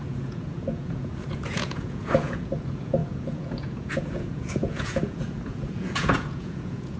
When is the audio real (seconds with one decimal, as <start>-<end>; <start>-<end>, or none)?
none